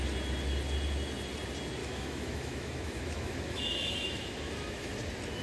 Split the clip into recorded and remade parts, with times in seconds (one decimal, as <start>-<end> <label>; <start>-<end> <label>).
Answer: 0.0-1.8 recorded; 1.8-4.9 remade; 4.9-5.4 recorded